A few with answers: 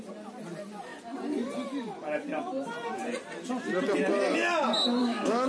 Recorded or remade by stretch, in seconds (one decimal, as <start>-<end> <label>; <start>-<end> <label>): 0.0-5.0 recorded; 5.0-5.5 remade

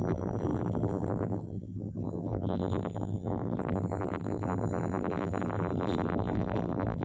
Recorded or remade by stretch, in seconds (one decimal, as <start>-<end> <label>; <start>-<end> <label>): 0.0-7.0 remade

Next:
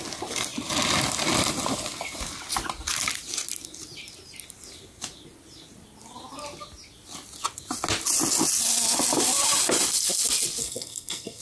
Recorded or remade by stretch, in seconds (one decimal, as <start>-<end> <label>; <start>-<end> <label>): 0.0-10.6 recorded; 10.6-11.4 remade